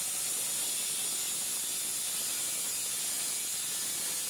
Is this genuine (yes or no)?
yes